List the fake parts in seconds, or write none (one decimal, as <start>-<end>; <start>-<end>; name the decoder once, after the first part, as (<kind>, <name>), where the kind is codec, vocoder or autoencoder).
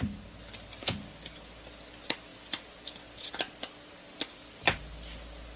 none